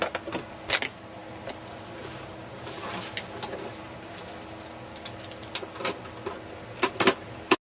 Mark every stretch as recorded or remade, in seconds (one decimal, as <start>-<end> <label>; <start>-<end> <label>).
0.0-7.7 recorded